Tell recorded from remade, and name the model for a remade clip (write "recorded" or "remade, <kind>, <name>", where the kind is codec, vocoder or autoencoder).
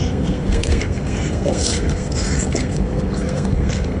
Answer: remade, codec, SNAC